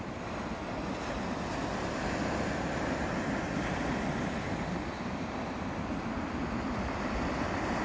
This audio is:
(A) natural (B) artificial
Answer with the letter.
A